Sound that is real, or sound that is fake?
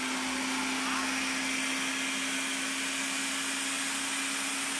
real